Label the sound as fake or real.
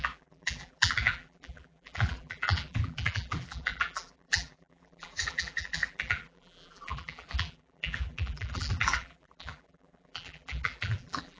fake